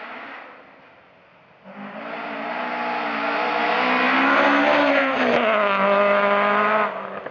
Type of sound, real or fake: real